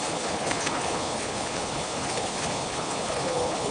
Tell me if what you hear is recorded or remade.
remade